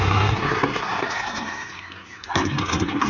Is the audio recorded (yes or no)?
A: no